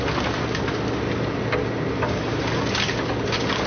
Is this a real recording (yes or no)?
yes